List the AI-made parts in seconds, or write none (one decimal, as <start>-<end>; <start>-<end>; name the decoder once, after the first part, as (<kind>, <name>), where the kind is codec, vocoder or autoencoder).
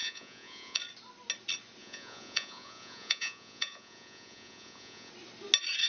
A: 0.0-0.8 (vocoder, Vocos); 1.8-5.1